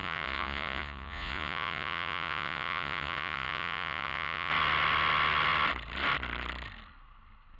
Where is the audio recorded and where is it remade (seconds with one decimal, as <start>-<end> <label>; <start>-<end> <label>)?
0.0-4.5 remade; 4.5-7.6 recorded